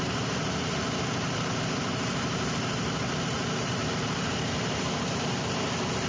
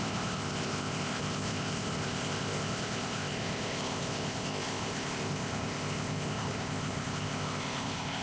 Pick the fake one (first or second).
second